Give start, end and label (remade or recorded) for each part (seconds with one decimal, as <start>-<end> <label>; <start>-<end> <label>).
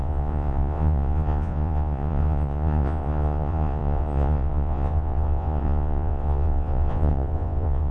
0.0-7.9 remade